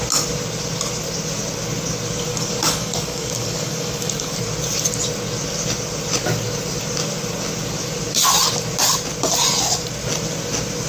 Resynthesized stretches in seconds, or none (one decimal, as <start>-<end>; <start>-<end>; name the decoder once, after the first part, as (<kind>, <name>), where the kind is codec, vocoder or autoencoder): 2.3-4.4 (codec, DAC)

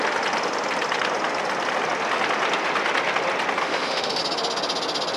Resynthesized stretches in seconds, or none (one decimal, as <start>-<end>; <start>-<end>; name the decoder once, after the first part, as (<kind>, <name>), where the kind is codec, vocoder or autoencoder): 3.6-4.2 (autoencoder, DAC-VAE)

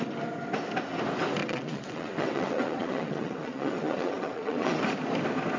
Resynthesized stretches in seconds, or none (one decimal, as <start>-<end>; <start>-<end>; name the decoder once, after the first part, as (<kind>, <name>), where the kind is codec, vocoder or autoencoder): 1.4-4.8 (vocoder, WaveNeXt)

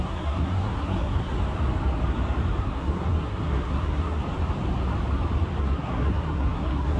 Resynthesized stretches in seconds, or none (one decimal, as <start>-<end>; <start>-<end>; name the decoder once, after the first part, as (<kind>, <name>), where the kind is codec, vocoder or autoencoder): 0.0-1.3 (codec, SNAC); 2.6-4.2; 5.6-7.0

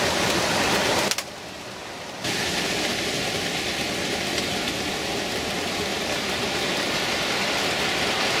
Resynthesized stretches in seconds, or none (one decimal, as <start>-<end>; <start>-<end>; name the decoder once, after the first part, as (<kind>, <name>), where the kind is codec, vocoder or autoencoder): 0.0-8.4 (vocoder, BigVGAN v2)

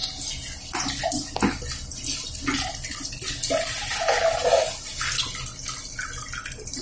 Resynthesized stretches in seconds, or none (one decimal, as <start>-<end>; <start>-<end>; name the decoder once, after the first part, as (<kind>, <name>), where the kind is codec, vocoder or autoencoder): none

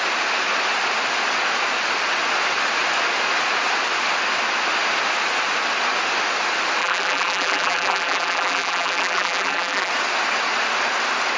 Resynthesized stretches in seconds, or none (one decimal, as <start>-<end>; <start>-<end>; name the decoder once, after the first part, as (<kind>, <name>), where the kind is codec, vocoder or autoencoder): 6.8-9.9 (vocoder, BigVGAN v2)

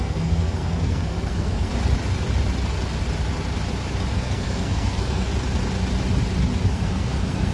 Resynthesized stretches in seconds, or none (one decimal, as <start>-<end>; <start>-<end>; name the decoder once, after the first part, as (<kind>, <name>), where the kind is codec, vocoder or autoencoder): 0.0-1.7 (codec, SNAC); 4.1-5.3; 6.7-7.5